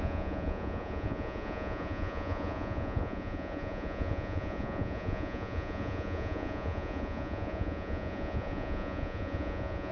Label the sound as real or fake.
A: fake